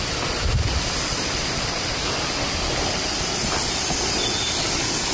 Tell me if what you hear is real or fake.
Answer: real